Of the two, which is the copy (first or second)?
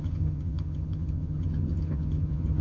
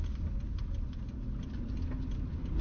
first